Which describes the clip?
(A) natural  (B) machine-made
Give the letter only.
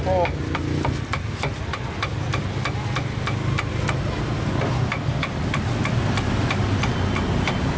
A